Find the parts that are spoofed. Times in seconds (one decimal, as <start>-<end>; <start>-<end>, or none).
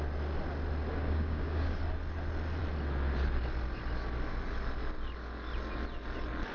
1.0-1.8